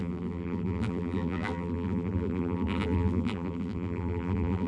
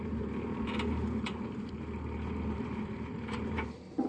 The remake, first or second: first